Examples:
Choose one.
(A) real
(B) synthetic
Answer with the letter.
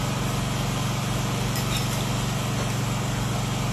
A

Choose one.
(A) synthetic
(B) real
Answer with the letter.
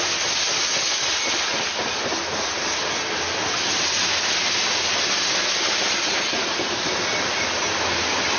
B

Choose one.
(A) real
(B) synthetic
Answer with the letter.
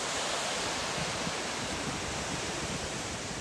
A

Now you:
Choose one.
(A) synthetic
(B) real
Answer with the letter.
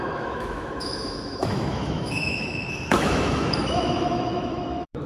A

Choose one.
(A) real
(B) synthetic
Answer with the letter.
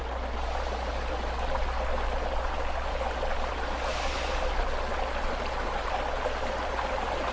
A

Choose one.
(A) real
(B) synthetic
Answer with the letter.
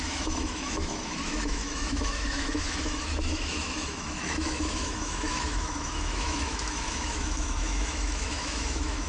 B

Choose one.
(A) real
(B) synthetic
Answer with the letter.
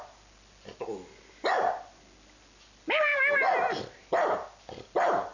A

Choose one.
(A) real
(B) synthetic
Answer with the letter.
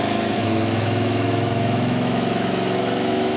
B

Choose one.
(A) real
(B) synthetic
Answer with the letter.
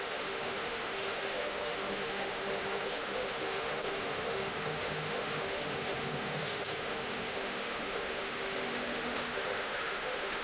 B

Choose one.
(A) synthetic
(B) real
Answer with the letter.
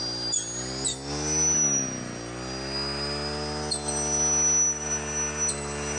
B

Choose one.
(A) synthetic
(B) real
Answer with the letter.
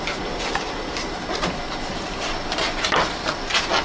B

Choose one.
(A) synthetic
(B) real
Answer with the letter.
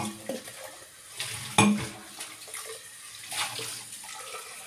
B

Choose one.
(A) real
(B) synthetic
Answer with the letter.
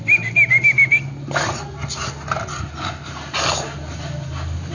A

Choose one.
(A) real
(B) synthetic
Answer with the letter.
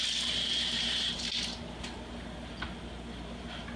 A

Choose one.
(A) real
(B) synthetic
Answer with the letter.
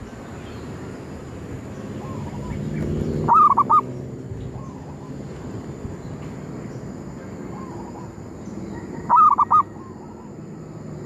A